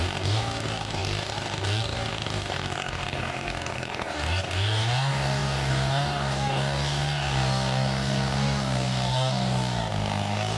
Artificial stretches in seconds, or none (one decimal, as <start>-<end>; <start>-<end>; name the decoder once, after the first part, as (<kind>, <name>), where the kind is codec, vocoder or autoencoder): 0.0-10.6 (codec, DAC)